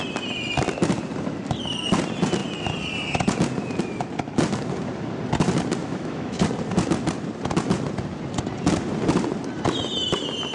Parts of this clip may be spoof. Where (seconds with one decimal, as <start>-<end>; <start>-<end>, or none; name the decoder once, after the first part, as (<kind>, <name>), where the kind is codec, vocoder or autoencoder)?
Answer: 5.8-6.4 (autoencoder, DAC-VAE)